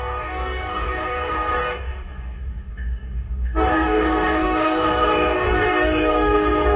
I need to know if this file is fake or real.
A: fake